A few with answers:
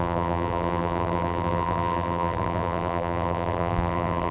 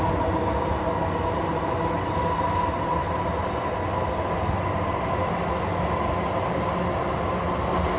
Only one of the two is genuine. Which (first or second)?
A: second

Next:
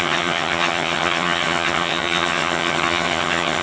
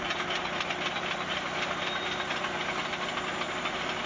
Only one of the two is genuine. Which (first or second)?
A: second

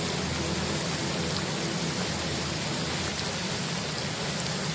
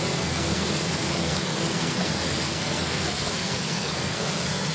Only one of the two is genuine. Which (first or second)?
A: first